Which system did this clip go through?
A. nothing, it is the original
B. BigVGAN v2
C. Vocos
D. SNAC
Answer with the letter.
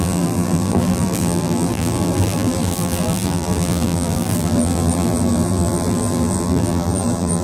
B